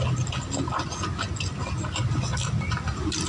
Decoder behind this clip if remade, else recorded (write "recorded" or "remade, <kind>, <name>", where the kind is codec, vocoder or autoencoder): recorded